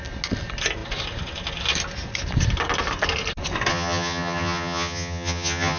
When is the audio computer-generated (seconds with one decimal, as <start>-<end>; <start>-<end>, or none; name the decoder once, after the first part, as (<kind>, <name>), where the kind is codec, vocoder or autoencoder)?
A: 3.7-5.8 (vocoder, HiFi-GAN)